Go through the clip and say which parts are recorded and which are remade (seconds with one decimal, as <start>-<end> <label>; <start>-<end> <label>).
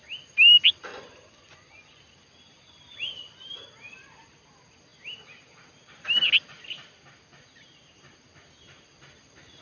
0.0-0.9 recorded; 0.9-2.0 remade; 2.0-9.6 recorded